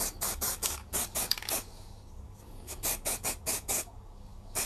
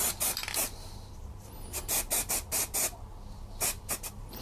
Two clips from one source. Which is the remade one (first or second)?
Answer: first